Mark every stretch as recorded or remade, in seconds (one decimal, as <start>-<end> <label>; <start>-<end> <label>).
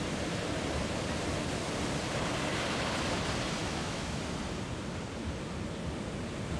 0.0-3.6 recorded; 3.6-4.2 remade; 4.2-6.6 recorded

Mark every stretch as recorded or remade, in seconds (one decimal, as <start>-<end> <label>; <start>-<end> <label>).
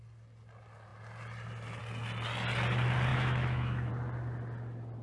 0.0-3.1 recorded; 3.1-3.9 remade; 3.9-5.0 recorded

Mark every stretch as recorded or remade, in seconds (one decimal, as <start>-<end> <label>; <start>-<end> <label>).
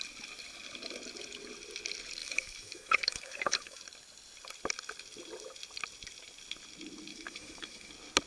0.0-2.2 recorded; 2.2-3.8 remade; 3.8-7.1 recorded; 7.1-7.9 remade; 7.9-8.3 recorded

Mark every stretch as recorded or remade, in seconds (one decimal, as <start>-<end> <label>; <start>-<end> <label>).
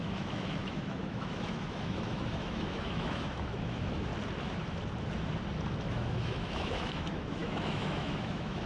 0.0-4.1 remade; 4.1-5.9 recorded; 5.9-8.7 remade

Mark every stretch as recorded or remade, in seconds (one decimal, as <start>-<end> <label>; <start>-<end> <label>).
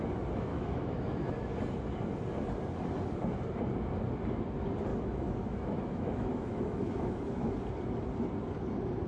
0.0-0.5 recorded; 0.5-1.3 remade; 1.3-4.9 recorded; 4.9-7.5 remade; 7.5-9.1 recorded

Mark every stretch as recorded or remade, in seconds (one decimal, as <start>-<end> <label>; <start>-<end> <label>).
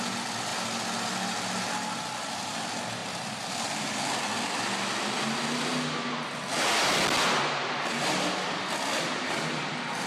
0.0-10.1 recorded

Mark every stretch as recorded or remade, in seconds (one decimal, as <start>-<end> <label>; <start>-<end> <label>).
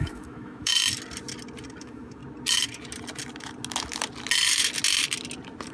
0.0-0.7 remade; 0.7-1.8 recorded; 1.8-2.2 remade; 2.2-5.7 recorded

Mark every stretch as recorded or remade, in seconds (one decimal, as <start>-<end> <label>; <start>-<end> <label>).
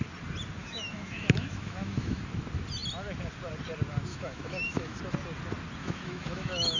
0.0-0.6 recorded; 0.6-2.2 remade; 2.2-4.1 recorded; 4.1-5.0 remade; 5.0-5.8 recorded; 5.8-6.8 remade